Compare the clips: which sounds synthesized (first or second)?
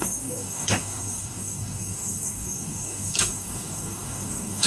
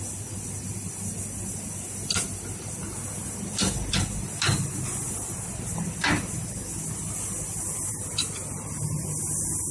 first